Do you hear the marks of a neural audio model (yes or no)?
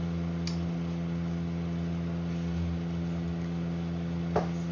no